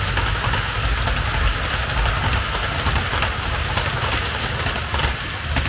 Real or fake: real